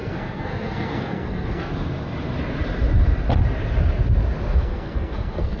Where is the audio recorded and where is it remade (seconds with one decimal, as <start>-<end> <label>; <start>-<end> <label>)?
0.0-1.7 remade; 1.7-4.5 recorded; 4.5-5.6 remade